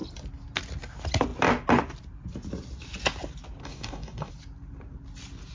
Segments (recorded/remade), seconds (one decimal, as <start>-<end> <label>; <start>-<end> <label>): 0.0-3.6 recorded; 3.6-4.3 remade; 4.3-5.5 recorded